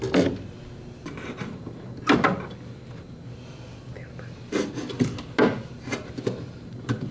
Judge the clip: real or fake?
real